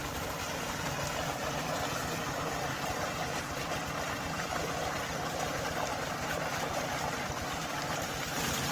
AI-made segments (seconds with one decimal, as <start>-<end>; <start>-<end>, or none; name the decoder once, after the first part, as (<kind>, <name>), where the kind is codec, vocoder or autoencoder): 5.9-6.8 (vocoder, BigVGAN v2)